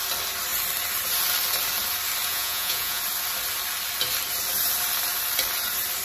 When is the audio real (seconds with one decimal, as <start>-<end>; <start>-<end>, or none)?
0.0-2.3; 3.0-6.0